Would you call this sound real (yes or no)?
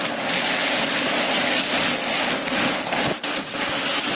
yes